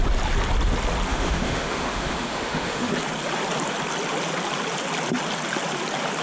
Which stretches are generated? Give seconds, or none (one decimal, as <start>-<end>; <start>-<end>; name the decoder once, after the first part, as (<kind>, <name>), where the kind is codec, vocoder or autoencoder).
1.1-2.9 (autoencoder, DAC-VAE)